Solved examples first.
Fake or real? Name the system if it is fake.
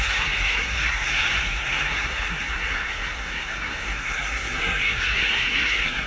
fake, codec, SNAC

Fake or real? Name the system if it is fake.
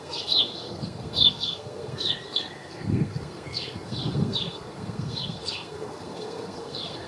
fake, codec, SNAC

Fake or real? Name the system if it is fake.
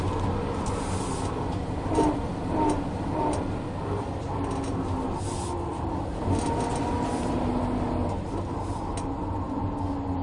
real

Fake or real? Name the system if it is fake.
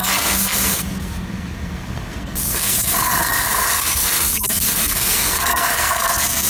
fake, codec, SNAC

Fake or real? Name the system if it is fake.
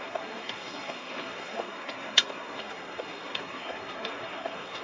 fake, codec, SNAC